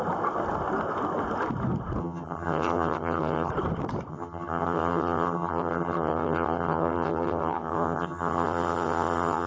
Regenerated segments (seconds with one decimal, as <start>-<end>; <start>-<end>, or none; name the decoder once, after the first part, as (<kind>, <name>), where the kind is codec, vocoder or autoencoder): 2.0-3.5 (vocoder, HiFi-GAN); 4.1-9.5